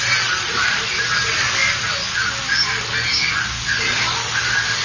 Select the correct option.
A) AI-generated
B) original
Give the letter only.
A